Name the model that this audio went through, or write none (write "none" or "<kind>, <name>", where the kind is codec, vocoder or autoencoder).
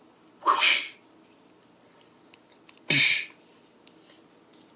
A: none